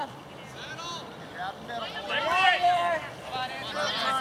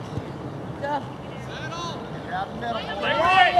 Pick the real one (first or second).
second